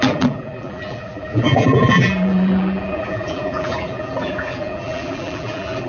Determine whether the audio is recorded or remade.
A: remade